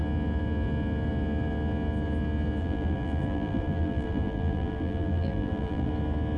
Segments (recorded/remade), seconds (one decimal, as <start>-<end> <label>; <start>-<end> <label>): 0.0-2.6 recorded; 2.6-5.9 remade; 5.9-6.4 recorded

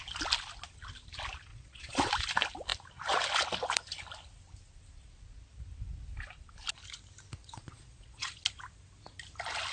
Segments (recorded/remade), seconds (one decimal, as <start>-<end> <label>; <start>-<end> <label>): 0.0-1.5 recorded; 1.5-2.1 remade; 2.1-7.4 recorded; 7.4-8.3 remade; 8.3-9.7 recorded